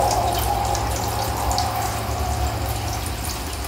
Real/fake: real